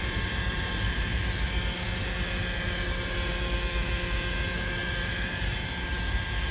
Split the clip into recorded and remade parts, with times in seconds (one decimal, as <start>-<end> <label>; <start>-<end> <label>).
0.0-6.5 recorded